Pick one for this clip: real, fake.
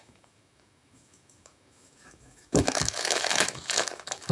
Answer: fake